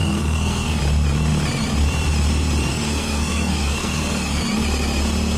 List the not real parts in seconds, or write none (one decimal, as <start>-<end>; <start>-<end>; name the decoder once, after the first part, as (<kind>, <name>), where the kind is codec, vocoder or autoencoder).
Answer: 0.0-0.8 (codec, SNAC); 2.7-4.4